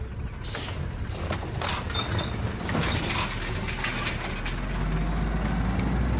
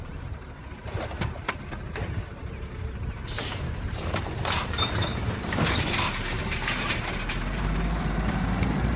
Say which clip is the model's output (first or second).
second